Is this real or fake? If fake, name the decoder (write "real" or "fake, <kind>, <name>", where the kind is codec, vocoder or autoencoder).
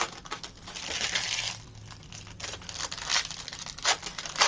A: real